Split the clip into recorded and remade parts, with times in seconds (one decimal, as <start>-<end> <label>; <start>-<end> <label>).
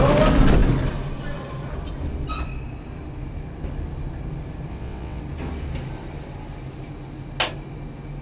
0.0-4.7 recorded; 4.7-5.2 remade; 5.2-8.2 recorded